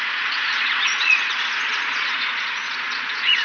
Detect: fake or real fake